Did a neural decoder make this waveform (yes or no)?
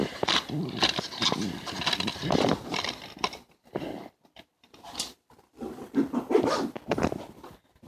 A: yes